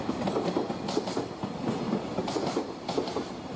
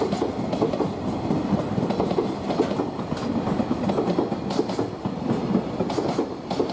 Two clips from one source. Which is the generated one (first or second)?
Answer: first